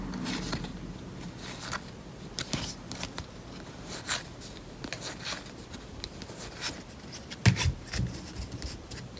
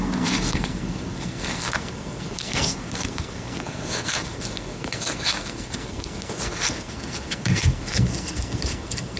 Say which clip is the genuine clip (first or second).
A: first